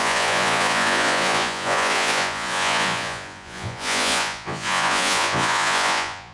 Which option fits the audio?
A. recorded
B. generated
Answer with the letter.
B